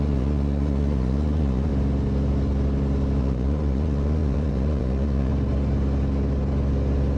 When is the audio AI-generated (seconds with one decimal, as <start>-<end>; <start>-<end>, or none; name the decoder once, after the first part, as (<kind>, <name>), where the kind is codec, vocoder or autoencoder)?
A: 0.0-1.7 (vocoder, Vocos); 3.2-5.3